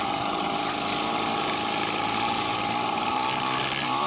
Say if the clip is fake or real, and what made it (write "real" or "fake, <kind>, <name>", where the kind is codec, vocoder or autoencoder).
real